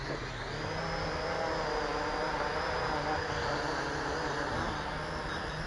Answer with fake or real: real